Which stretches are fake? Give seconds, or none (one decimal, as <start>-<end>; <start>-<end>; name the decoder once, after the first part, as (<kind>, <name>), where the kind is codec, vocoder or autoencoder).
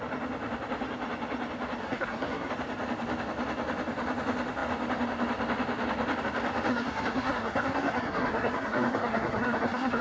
1.8-2.5 (codec, SNAC); 6.7-10.0